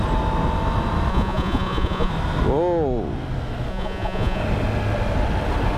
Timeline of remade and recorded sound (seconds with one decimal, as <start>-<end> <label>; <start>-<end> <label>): 0.0-1.1 recorded; 1.1-2.1 remade; 2.1-3.7 recorded; 3.7-4.4 remade; 4.4-5.8 recorded